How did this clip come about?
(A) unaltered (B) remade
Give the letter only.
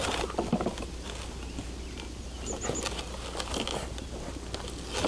A